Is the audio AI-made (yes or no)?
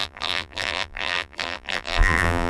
yes